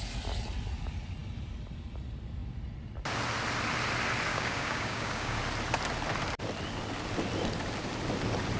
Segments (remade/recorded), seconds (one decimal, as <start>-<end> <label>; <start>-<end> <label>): 0.0-4.3 recorded; 4.3-5.4 remade; 5.4-8.6 recorded